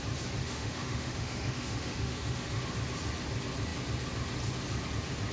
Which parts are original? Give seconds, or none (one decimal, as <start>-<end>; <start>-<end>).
0.0-0.4; 2.6-5.3